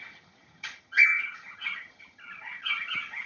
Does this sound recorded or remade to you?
remade